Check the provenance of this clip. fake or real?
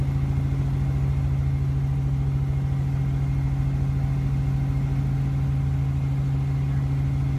real